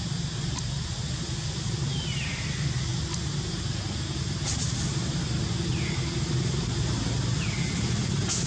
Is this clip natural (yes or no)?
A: yes